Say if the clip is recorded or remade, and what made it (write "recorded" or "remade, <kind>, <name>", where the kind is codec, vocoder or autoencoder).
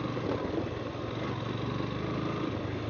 recorded